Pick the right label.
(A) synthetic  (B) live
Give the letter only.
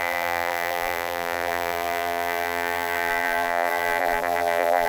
A